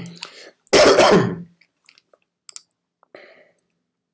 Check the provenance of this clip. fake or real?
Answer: real